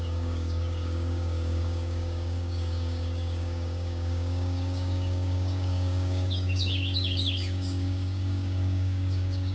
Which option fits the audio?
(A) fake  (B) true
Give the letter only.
A